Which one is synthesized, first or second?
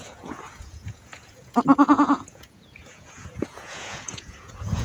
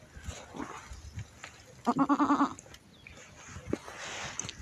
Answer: first